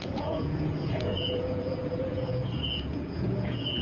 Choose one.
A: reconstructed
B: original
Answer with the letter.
A